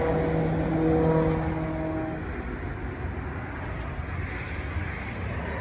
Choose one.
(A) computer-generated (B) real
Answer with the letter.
B